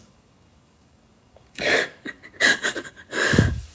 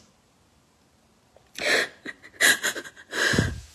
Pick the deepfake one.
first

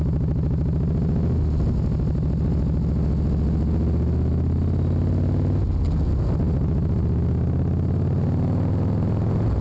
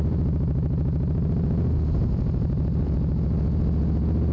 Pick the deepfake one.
second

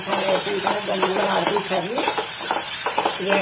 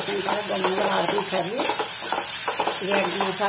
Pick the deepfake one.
first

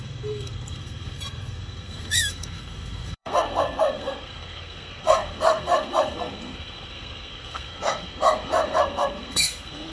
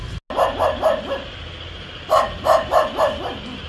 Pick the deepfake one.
first